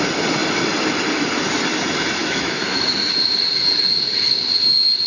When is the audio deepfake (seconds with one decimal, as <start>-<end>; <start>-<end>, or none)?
2.2-3.1